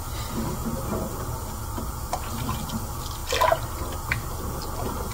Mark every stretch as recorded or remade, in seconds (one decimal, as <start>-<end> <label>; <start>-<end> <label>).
0.0-5.1 recorded